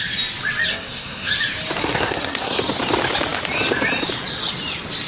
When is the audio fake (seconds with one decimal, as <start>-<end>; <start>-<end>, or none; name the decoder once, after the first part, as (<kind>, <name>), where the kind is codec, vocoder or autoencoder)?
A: 0.7-1.3 (codec, SNAC); 1.8-2.6